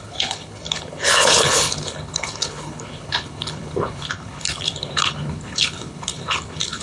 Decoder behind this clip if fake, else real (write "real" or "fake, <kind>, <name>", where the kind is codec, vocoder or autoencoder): fake, codec, HILCodec